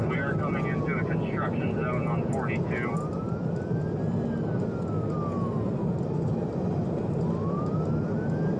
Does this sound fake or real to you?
real